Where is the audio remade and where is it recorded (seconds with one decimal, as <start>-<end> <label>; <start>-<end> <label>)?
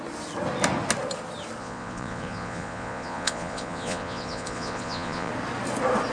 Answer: 0.0-1.6 recorded; 1.6-5.3 remade; 5.3-6.1 recorded